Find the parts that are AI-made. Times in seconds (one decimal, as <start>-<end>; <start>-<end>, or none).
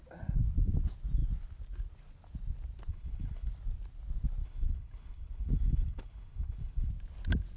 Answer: 2.9-3.5; 4.4-6.9